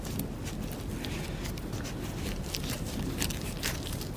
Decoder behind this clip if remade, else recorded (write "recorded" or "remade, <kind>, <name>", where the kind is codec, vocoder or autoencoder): recorded